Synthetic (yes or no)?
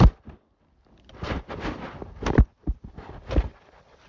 no